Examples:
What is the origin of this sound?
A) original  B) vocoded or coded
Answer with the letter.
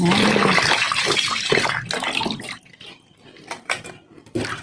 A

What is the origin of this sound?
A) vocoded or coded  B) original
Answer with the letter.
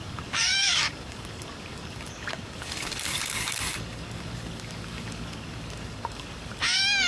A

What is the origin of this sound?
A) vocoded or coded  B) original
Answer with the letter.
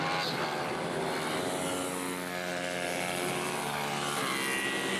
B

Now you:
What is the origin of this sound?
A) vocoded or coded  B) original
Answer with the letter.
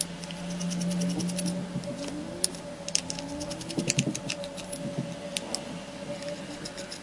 B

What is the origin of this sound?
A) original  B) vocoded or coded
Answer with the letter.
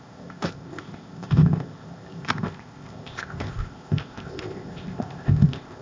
B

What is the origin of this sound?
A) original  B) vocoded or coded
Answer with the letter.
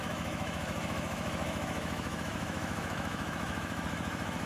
B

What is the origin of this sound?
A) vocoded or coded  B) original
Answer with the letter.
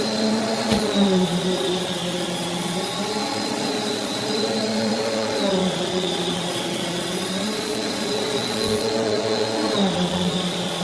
A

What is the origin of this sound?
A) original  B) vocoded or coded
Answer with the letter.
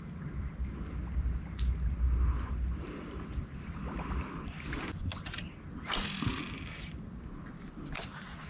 A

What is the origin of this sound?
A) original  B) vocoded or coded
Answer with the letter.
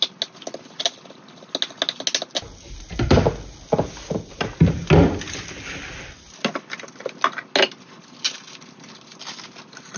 A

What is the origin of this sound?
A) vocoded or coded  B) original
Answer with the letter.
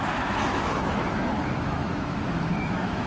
A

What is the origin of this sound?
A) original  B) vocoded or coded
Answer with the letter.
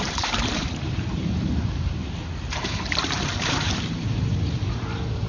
B